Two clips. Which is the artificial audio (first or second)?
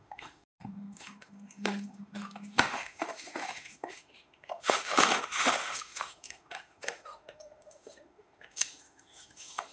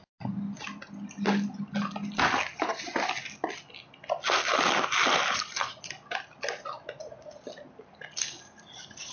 first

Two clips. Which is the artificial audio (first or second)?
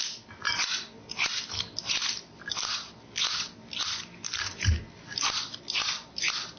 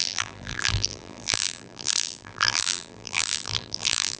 second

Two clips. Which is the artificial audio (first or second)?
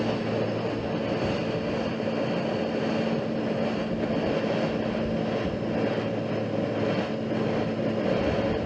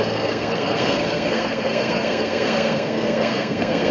second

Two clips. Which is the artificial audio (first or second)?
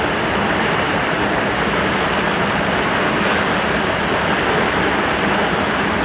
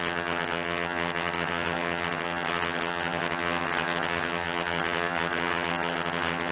second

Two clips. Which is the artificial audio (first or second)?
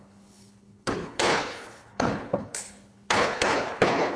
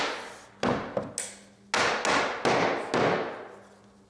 first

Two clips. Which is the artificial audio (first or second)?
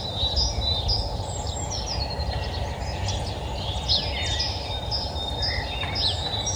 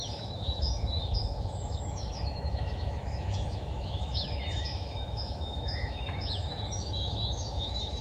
second